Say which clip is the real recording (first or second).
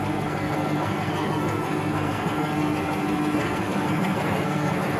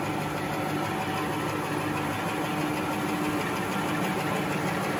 second